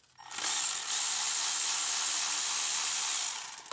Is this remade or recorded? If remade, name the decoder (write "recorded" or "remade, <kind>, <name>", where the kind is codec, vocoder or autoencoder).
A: recorded